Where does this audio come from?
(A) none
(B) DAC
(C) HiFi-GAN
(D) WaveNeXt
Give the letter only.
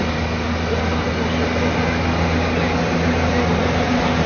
A